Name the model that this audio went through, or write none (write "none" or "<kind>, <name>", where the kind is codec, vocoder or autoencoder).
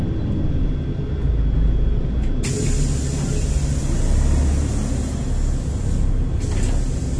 none